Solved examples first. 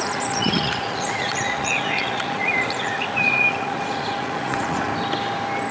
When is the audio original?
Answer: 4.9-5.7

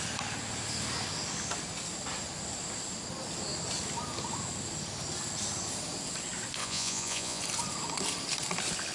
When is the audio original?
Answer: 0.0-6.6; 7.4-8.9